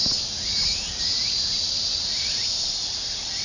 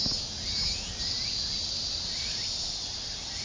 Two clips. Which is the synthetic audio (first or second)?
first